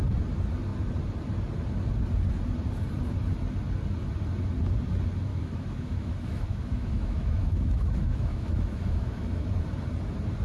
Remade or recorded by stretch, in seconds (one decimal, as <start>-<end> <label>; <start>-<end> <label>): 0.0-5.3 recorded; 5.3-9.4 remade; 9.4-10.4 recorded